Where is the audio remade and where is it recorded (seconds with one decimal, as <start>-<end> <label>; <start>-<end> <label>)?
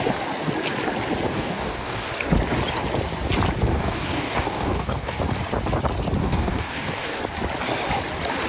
0.0-1.3 recorded; 1.3-2.1 remade; 2.1-3.7 recorded; 3.7-5.2 remade; 5.2-6.2 recorded; 6.2-7.2 remade; 7.2-8.5 recorded